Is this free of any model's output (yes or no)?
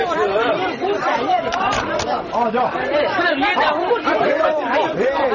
no